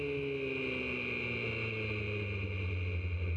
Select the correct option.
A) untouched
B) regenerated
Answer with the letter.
A